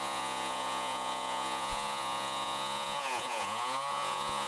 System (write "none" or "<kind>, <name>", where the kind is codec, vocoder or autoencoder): vocoder, Vocos